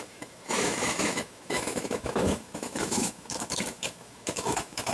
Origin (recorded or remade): remade